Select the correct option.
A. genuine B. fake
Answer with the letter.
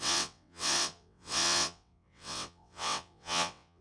B